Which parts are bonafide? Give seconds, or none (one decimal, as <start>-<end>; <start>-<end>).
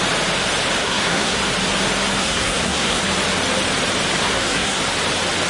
0.0-0.8; 1.4-2.2; 3.0-4.2; 4.8-5.5